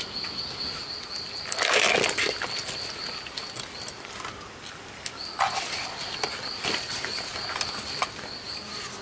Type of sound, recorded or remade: recorded